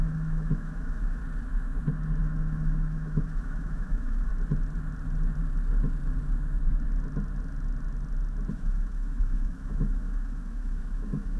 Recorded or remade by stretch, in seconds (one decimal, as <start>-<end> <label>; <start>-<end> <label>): 0.0-1.2 remade; 1.2-2.2 recorded; 2.2-4.3 remade; 4.3-8.5 recorded; 8.5-11.4 remade